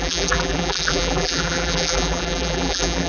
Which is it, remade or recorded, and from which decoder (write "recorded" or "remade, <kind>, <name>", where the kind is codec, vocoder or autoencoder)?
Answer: remade, vocoder, BigVGAN v2